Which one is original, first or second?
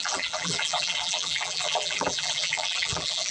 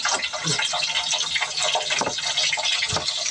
second